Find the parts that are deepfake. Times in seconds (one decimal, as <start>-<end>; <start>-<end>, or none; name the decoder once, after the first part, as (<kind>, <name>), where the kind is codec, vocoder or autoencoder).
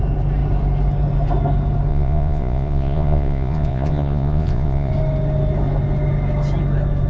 1.9-4.9 (vocoder, Vocos)